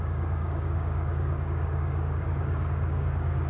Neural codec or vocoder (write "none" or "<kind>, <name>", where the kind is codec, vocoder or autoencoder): codec, DAC